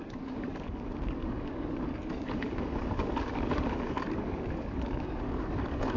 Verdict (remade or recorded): remade